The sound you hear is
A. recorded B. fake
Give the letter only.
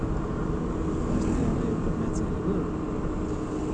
A